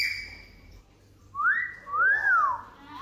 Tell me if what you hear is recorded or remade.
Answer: recorded